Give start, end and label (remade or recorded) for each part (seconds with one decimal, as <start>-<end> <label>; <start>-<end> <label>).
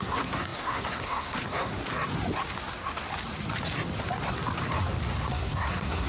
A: 0.0-1.8 remade; 1.8-5.3 recorded; 5.3-6.1 remade